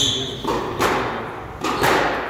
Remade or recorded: recorded